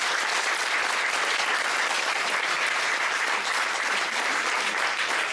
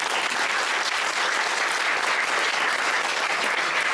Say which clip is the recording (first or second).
second